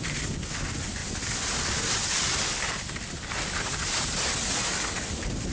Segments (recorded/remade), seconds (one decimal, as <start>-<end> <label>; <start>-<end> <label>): 0.0-5.5 recorded